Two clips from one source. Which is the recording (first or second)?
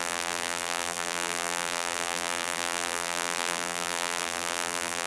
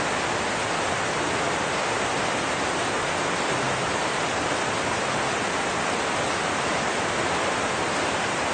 second